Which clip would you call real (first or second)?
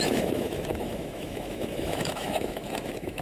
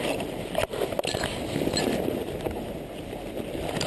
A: second